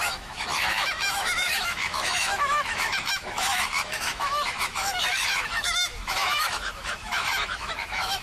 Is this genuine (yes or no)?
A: no